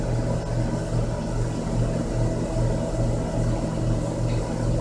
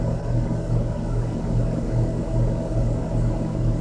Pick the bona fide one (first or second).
first